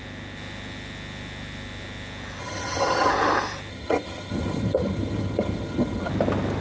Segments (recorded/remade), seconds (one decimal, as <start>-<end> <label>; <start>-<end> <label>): 0.0-2.4 recorded; 2.4-3.1 remade; 3.1-3.7 recorded; 3.7-6.1 remade; 6.1-6.6 recorded